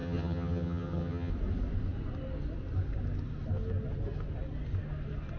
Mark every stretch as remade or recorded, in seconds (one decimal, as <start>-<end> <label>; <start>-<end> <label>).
0.0-1.3 remade; 1.3-5.4 recorded